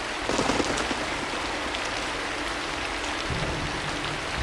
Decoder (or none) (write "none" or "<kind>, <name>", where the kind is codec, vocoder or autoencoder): none